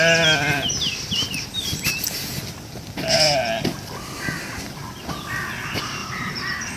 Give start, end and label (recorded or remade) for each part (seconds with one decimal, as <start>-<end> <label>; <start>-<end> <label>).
0.0-6.0 recorded; 6.0-6.8 remade